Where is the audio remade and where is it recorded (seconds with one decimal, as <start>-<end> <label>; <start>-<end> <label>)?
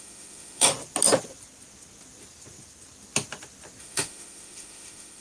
0.0-0.7 remade; 0.7-3.8 recorded; 3.8-5.2 remade